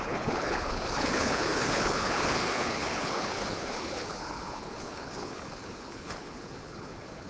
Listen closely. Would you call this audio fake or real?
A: fake